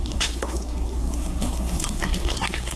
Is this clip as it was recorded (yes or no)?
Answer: no